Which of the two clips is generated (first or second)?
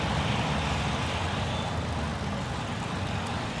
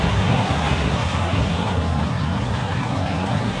second